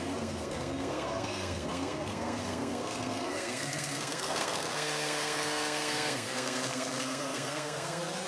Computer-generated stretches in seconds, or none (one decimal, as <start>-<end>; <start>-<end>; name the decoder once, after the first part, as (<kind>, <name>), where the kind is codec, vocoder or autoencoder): 0.0-8.3 (codec, SNAC)